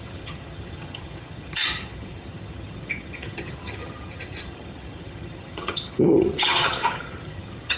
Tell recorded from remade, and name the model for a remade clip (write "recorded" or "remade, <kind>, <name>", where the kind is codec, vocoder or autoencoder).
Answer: remade, vocoder, HiFi-GAN